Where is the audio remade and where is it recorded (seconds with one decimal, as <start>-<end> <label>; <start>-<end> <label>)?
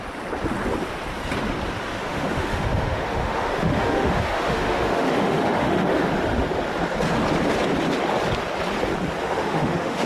0.0-1.8 recorded; 1.8-6.1 remade; 6.1-9.2 recorded; 9.2-10.1 remade